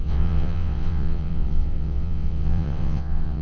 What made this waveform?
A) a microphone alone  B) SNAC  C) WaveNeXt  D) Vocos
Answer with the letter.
C